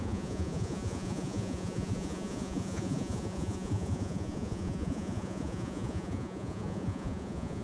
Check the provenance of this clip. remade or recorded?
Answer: remade